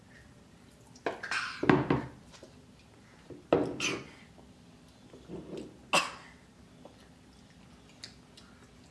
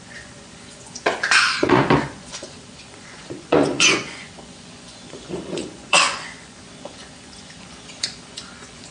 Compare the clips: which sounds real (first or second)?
first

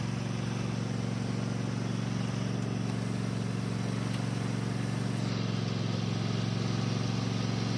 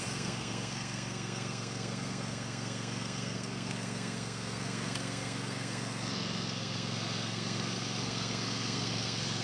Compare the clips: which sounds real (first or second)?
first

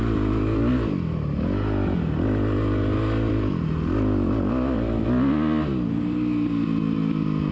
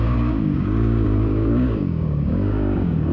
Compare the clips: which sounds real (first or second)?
first